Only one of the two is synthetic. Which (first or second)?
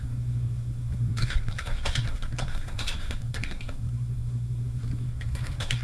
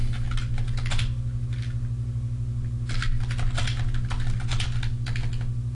first